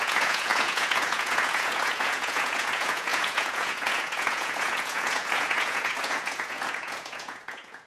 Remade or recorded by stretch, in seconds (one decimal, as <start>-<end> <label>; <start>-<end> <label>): 0.0-7.9 remade